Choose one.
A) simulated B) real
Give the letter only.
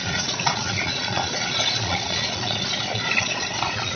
A